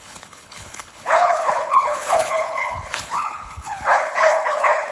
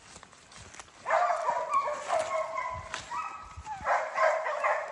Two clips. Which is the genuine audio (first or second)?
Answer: second